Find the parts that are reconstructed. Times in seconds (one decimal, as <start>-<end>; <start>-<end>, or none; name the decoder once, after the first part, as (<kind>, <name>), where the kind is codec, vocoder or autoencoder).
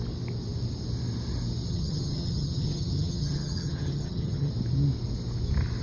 1.7-4.5 (vocoder, HiFi-GAN)